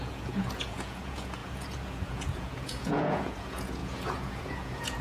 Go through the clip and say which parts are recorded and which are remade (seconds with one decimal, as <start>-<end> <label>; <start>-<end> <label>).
0.0-5.0 remade